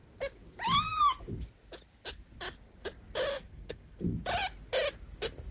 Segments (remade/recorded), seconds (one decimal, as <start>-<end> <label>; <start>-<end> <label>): 0.0-3.3 recorded; 3.3-4.0 remade; 4.0-5.5 recorded